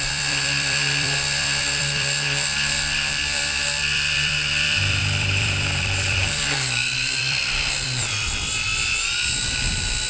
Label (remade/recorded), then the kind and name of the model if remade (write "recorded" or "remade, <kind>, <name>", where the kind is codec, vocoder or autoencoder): remade, vocoder, BigVGAN v2